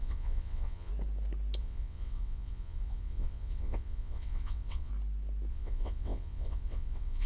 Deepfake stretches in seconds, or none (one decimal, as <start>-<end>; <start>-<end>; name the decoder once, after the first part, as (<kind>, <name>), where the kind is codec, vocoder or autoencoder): 0.0-0.9 (vocoder, WaveNeXt); 1.6-4.9; 5.5-7.3